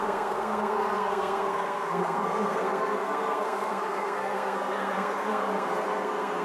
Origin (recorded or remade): remade